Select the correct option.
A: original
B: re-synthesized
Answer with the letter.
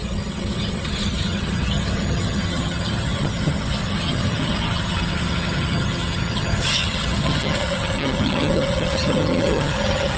B